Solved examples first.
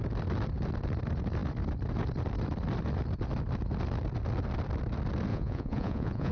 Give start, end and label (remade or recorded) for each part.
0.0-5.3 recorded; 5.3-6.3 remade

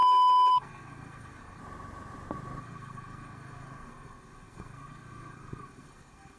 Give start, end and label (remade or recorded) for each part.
0.0-0.5 recorded; 0.5-1.6 remade; 1.6-2.6 recorded; 2.6-6.4 remade

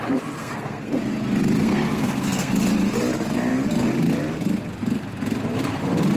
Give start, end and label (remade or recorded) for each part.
0.0-0.4 recorded; 0.4-1.0 remade; 1.0-1.6 recorded; 1.6-2.5 remade; 2.5-6.2 recorded

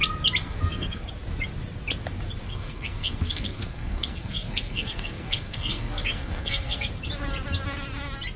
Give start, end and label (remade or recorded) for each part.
0.0-0.4 recorded; 0.4-1.1 remade; 1.1-2.5 recorded; 2.5-6.9 remade; 6.9-8.4 recorded

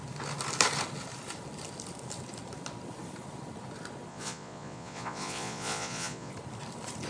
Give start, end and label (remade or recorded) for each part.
0.0-4.1 recorded; 4.1-6.3 remade; 6.3-7.1 recorded

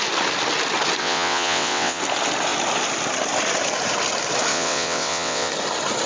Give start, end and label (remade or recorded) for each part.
0.0-1.0 recorded; 1.0-2.0 remade; 2.0-4.5 recorded; 4.5-5.5 remade; 5.5-6.1 recorded